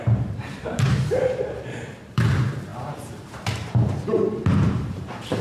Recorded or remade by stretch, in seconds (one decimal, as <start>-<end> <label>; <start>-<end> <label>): 0.0-5.4 remade